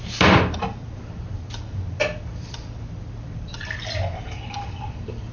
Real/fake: fake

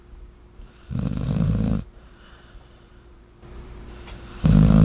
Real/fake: fake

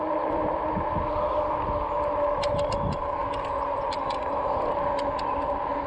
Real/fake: real